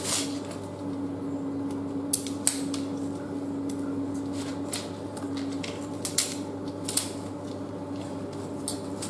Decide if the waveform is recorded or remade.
recorded